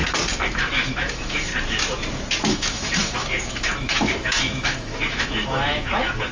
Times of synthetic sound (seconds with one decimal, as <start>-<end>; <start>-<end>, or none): 0.5-1.5; 2.4-6.3